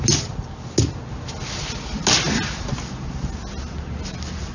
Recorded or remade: recorded